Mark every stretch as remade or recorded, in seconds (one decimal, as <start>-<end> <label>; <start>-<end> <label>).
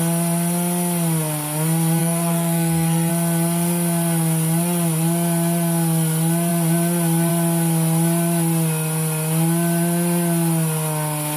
0.0-2.0 recorded; 2.0-3.1 remade; 3.1-11.4 recorded